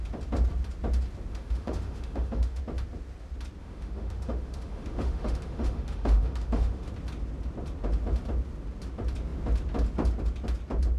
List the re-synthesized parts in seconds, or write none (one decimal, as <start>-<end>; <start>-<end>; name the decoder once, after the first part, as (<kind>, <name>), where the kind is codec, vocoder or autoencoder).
1.3-2.6 (autoencoder, DAC-VAE); 3.6-6.9